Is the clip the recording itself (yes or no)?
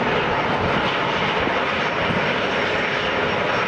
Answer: yes